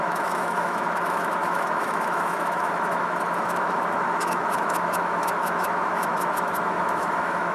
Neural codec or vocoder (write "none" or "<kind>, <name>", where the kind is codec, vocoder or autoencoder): autoencoder, DAC-VAE